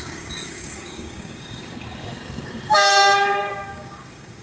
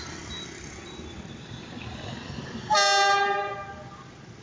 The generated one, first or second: first